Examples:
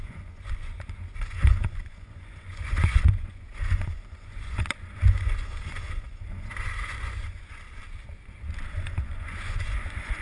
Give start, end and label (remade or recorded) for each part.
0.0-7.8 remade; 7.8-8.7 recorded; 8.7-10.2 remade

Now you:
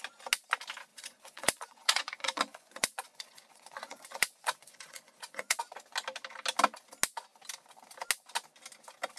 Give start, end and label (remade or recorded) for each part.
0.0-0.9 recorded; 0.9-5.6 remade; 5.6-9.2 recorded

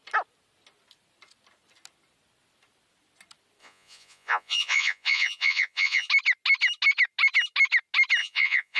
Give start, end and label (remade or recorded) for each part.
0.0-3.6 recorded; 3.6-6.1 remade; 6.1-8.2 recorded; 8.2-8.8 remade